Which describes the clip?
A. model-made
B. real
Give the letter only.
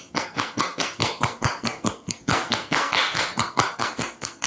A